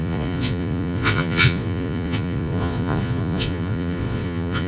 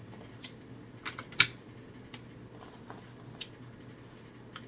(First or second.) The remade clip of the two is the first